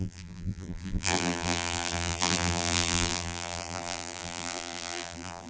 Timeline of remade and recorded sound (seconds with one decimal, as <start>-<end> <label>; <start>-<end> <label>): 0.0-5.5 remade